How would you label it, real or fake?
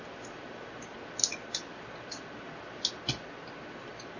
real